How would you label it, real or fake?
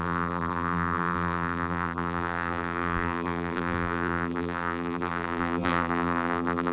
fake